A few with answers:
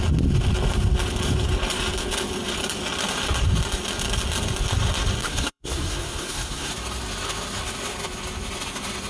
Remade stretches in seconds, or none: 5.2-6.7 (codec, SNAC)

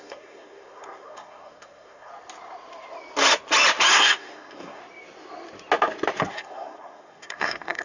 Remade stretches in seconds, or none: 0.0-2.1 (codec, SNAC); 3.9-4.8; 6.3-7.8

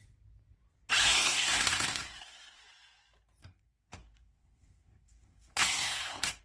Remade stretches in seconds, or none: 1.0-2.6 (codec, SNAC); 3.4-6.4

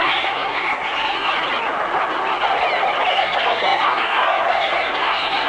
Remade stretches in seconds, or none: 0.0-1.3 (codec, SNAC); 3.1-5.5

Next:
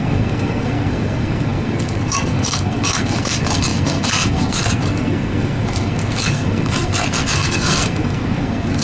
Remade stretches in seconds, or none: 0.0-8.8 (codec, SNAC)